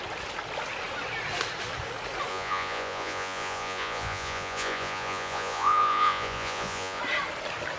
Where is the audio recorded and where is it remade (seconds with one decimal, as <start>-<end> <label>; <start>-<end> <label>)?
0.0-2.3 recorded; 2.3-7.0 remade; 7.0-7.8 recorded